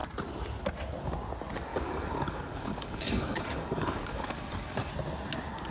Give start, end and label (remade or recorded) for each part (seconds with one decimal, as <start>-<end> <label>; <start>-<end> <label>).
0.0-1.7 recorded; 1.7-4.9 remade; 4.9-5.7 recorded

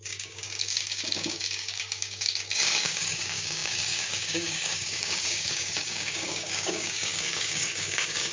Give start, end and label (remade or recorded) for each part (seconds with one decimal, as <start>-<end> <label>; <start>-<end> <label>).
0.0-8.3 remade

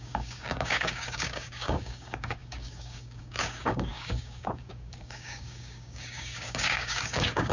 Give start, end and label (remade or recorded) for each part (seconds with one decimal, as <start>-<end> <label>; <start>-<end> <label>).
0.0-7.5 remade

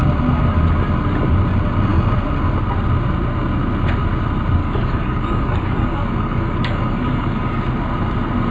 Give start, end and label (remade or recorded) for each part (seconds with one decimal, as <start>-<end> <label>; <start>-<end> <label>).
0.0-4.6 recorded; 4.6-7.6 remade; 7.6-8.5 recorded

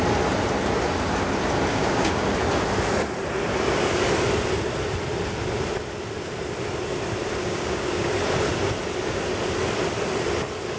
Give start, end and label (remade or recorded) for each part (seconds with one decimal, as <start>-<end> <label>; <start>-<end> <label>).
0.0-1.7 recorded; 1.7-2.2 remade; 2.2-7.4 recorded; 7.4-8.1 remade; 8.1-10.8 recorded